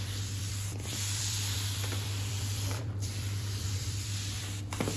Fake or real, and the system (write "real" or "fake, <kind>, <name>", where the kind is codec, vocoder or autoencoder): fake, vocoder, BigVGAN v2